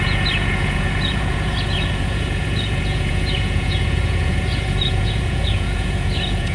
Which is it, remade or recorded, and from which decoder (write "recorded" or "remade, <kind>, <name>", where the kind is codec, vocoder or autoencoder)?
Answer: remade, vocoder, Vocos